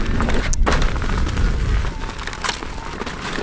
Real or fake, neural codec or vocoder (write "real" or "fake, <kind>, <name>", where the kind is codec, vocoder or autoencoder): real